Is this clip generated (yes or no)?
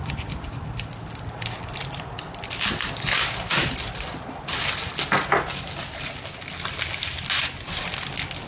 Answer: no